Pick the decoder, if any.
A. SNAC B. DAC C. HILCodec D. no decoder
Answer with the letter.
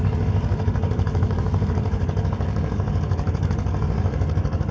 B